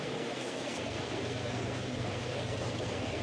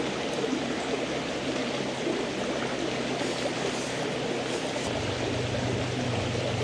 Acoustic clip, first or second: second